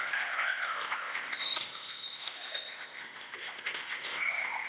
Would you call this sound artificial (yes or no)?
yes